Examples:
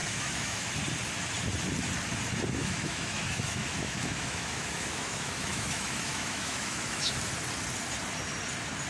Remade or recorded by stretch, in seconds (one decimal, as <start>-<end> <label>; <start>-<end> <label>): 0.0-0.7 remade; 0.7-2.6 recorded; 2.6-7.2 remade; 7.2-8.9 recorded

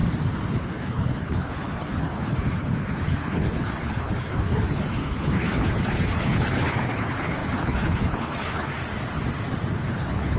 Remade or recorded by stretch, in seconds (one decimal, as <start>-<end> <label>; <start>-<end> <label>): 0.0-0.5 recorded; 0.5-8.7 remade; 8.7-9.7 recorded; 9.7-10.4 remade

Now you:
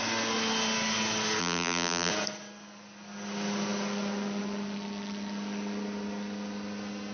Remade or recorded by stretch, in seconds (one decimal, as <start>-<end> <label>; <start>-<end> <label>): 0.0-1.4 recorded; 1.4-2.1 remade; 2.1-7.1 recorded

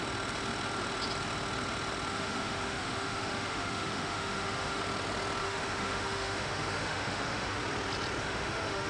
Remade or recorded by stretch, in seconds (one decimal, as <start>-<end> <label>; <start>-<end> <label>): 0.0-2.1 recorded; 2.1-4.8 remade; 4.8-5.4 recorded; 5.4-7.6 remade; 7.6-8.2 recorded; 8.2-8.9 remade

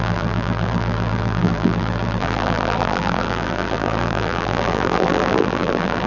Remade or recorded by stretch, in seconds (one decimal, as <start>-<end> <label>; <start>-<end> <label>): 0.0-6.1 remade